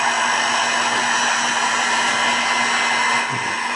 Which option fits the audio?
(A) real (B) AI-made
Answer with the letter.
A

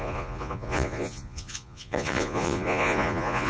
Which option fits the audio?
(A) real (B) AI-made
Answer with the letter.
B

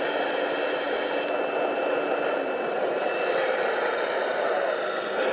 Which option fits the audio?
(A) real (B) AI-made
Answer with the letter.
A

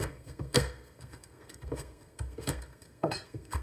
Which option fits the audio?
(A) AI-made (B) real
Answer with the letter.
A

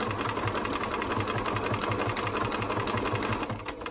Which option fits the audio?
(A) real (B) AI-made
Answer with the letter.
A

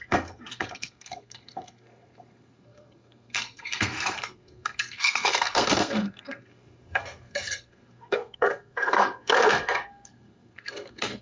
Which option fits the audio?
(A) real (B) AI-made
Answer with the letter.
B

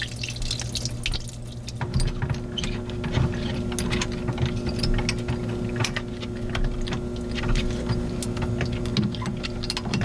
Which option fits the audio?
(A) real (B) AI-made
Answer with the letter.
A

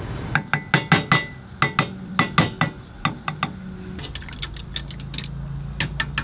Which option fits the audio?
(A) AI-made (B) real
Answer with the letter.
B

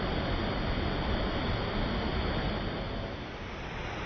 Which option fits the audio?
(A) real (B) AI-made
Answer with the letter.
A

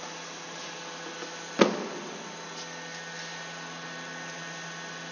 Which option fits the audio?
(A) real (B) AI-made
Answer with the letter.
A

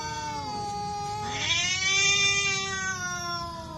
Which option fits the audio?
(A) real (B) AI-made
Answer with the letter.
A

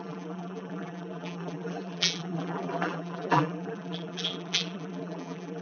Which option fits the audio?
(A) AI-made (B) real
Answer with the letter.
A